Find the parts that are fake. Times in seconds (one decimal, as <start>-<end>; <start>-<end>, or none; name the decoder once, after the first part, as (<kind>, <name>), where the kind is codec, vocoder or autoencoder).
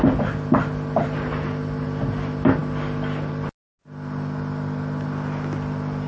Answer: none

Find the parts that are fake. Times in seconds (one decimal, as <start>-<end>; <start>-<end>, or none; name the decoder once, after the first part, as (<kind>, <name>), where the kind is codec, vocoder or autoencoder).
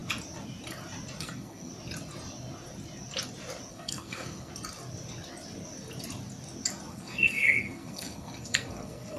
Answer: 1.2-1.7 (codec, SNAC); 3.7-4.5; 6.9-9.2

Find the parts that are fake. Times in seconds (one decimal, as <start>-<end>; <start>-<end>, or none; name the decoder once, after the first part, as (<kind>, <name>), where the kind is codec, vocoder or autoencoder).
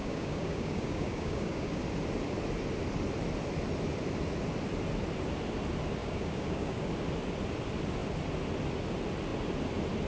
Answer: 0.0-1.8 (codec, DAC); 6.0-6.9